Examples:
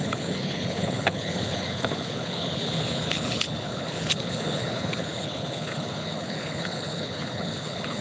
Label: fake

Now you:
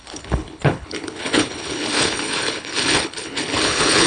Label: fake